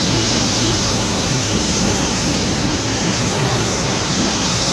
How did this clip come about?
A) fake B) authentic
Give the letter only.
A